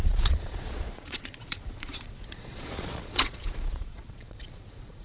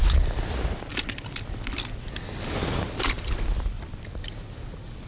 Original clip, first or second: second